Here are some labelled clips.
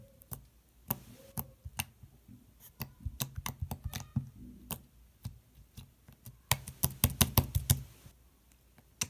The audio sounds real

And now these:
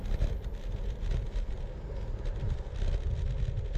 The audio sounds real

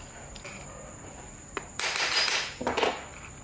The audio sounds real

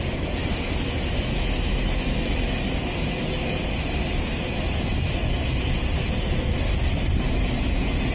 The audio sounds real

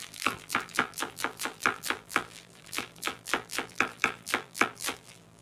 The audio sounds fake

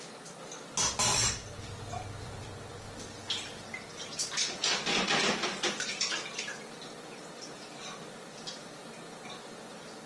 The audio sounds real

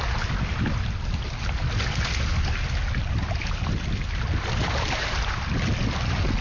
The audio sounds real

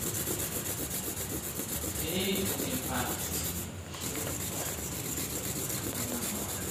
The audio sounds fake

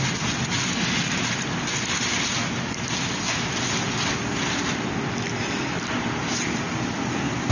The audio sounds real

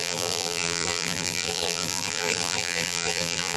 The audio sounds fake